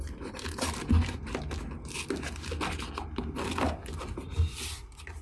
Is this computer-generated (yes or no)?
no